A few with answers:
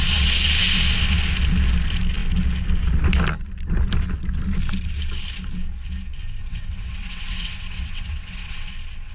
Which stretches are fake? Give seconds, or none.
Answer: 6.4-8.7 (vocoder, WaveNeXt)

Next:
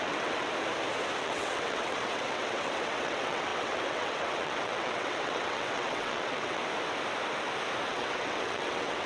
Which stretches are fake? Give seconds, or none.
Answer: 0.0-0.5 (vocoder, WaveNeXt); 1.2-6.6; 7.9-9.1

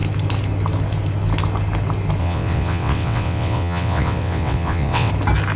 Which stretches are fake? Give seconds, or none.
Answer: 2.2-5.1 (vocoder, WaveNeXt)

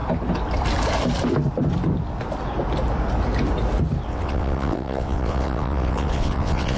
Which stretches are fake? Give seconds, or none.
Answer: 4.1-6.8 (vocoder, WaveNeXt)

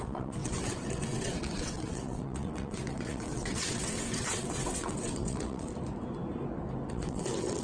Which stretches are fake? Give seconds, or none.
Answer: 0.0-5.7 (vocoder, WaveNeXt); 6.9-7.6

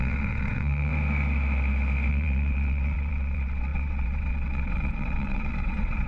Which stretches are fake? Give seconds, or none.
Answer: 0.0-0.9 (vocoder, WaveNeXt); 2.1-6.1